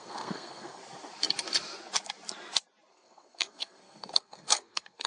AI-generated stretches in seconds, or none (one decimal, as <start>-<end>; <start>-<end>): 0.0-0.8; 2.9-5.1